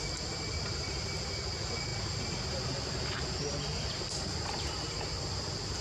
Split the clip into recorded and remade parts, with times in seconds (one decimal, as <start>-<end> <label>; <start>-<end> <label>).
0.0-5.8 recorded